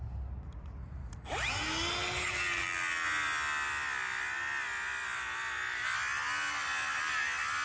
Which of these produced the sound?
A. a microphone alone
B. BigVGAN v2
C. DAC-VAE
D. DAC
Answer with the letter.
A